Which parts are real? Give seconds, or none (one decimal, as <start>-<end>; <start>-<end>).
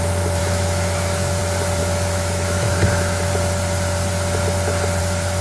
0.0-0.4; 1.4-1.8; 3.3-5.4